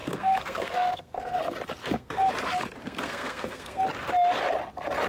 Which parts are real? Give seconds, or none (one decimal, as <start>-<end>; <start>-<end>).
1.4-1.8; 2.3-2.8; 3.8-5.1